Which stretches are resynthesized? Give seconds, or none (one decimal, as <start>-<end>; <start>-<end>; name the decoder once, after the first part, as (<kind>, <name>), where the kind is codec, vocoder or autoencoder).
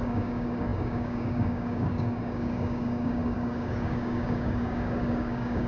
0.0-5.7 (codec, DAC)